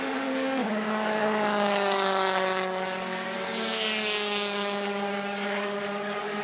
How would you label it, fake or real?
fake